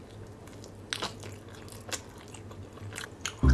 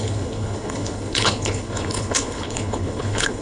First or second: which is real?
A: first